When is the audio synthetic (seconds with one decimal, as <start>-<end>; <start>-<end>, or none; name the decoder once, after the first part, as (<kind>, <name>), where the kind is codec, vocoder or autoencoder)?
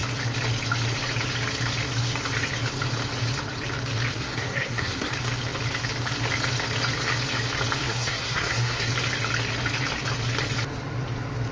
4.1-5.1 (codec, SNAC); 7.8-8.9